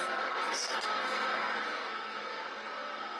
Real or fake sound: fake